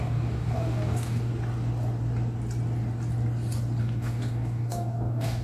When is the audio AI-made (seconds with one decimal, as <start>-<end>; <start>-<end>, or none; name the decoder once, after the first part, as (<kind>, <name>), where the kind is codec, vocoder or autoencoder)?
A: 0.0-1.3 (codec, DAC); 3.8-5.4